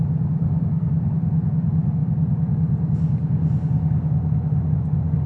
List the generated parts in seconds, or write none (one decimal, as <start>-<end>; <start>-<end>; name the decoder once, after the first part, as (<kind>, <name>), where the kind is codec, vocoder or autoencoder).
0.4-0.9 (codec, SNAC)